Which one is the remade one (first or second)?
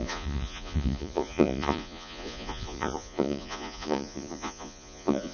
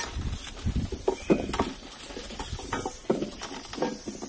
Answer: first